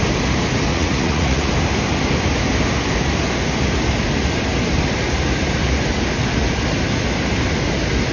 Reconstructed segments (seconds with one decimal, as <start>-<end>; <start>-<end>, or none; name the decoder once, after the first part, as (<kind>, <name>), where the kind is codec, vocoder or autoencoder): 0.7-1.5 (vocoder, Vocos)